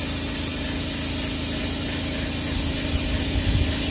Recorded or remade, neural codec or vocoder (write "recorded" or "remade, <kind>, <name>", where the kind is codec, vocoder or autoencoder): recorded